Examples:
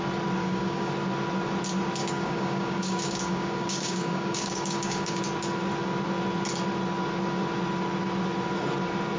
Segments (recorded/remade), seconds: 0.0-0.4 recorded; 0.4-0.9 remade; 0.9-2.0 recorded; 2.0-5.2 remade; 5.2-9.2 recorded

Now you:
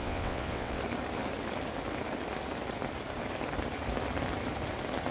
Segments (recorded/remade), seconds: 0.0-0.8 remade; 0.8-5.1 recorded

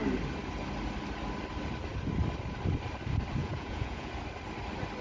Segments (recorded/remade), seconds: 0.0-3.4 recorded; 3.4-4.1 remade; 4.1-5.0 recorded